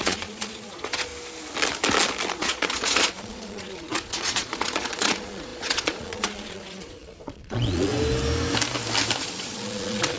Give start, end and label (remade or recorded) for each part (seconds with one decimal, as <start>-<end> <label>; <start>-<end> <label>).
0.0-1.1 remade; 1.1-2.3 recorded; 2.3-7.9 remade; 7.9-9.2 recorded; 9.2-10.2 remade